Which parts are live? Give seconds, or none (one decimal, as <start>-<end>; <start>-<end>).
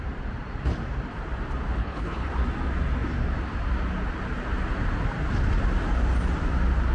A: 0.0-1.8; 2.3-6.9